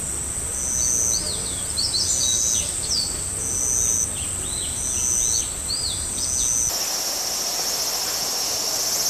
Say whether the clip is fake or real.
real